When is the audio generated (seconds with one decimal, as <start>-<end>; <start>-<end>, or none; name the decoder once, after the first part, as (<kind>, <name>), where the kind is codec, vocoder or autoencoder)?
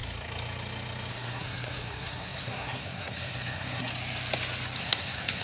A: 1.1-3.9 (codec, SNAC); 4.8-5.4